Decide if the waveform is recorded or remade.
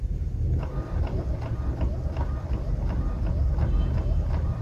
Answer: recorded